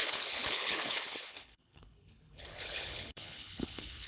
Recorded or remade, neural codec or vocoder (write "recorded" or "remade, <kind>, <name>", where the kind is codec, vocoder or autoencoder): remade, codec, HILCodec